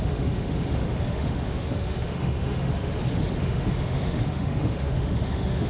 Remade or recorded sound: remade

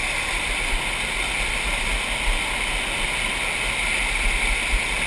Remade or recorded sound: recorded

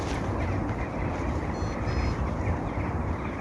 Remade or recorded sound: recorded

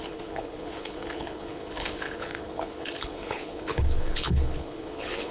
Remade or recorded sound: remade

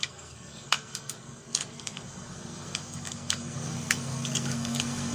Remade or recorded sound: remade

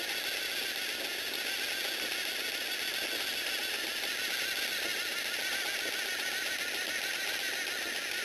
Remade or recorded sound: recorded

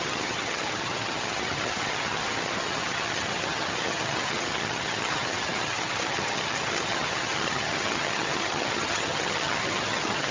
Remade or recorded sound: remade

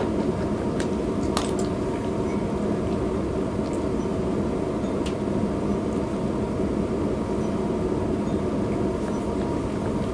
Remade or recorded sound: recorded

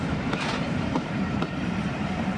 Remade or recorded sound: remade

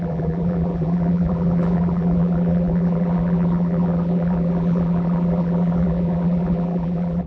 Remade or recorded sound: remade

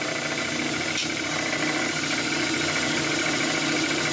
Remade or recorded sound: recorded